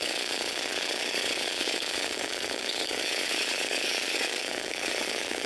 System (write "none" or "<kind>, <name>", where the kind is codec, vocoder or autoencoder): codec, DAC